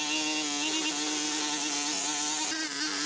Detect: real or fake real